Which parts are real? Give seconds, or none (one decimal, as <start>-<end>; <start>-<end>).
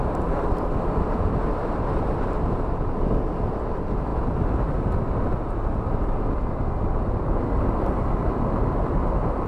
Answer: 0.0-9.5